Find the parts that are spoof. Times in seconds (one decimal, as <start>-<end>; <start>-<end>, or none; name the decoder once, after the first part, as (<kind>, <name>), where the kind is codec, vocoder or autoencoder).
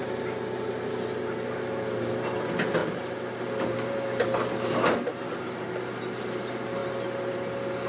2.8-3.4 (vocoder, BigVGAN v2); 5.1-6.0; 6.8-7.9